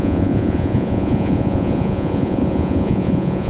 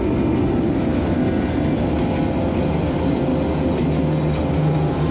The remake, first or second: first